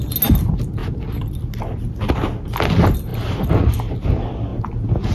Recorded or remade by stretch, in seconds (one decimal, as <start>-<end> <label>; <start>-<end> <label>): 0.0-5.1 recorded